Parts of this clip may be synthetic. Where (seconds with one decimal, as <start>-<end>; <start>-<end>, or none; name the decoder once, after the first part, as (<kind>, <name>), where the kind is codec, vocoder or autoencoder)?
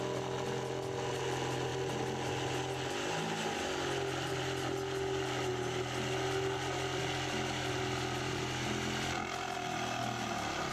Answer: none